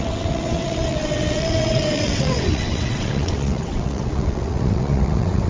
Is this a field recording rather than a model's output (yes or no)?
no